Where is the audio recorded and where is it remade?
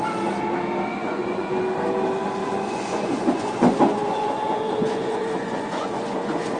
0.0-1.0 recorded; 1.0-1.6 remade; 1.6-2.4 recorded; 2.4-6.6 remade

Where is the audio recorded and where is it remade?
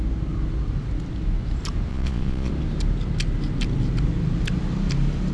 0.0-1.9 recorded; 1.9-2.5 remade; 2.5-5.3 recorded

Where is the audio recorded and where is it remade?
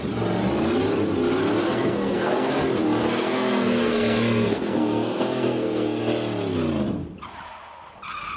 0.0-1.6 recorded; 1.6-2.5 remade; 2.5-3.0 recorded; 3.0-6.0 remade; 6.0-8.4 recorded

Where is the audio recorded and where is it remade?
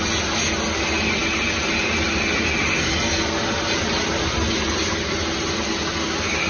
0.0-6.5 recorded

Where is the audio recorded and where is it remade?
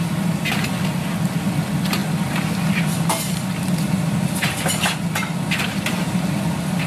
0.0-6.9 recorded